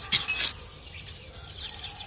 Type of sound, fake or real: real